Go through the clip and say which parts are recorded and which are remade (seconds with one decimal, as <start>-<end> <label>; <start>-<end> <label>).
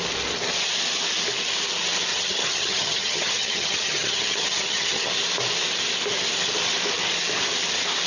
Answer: 0.0-2.1 recorded; 2.1-5.1 remade; 5.1-8.1 recorded